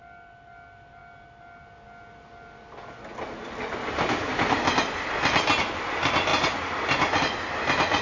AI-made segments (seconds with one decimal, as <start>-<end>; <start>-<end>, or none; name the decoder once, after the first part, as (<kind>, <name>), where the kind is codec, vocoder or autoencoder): none